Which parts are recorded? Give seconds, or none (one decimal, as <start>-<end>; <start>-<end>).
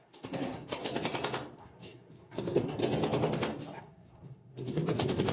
0.8-1.6; 2.8-3.8